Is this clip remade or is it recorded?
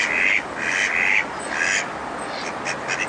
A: recorded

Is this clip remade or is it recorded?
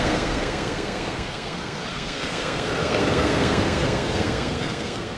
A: remade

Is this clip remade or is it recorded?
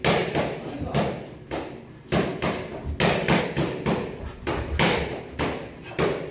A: recorded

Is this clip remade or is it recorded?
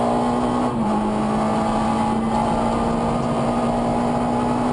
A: recorded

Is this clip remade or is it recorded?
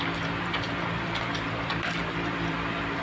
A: remade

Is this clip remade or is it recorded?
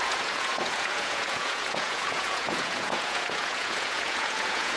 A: remade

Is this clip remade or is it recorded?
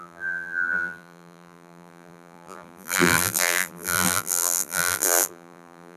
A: remade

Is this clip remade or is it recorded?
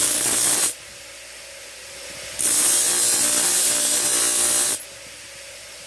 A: recorded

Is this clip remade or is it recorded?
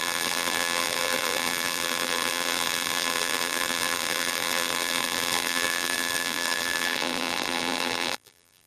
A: remade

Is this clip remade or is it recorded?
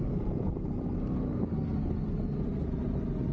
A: recorded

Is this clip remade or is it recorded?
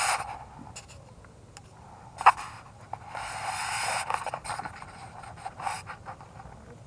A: recorded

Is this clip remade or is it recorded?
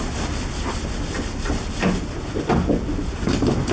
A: recorded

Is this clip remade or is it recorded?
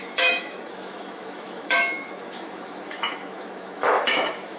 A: remade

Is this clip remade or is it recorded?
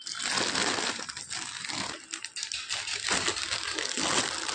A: recorded